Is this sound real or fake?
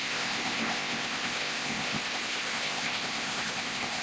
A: fake